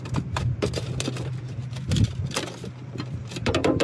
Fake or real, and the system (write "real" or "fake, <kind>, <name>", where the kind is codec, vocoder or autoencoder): fake, vocoder, BigVGAN v2